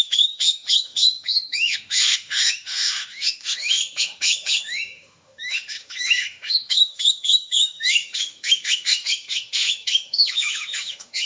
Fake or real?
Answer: fake